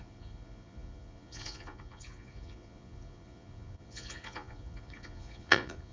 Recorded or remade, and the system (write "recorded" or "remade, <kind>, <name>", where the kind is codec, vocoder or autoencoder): remade, vocoder, Vocos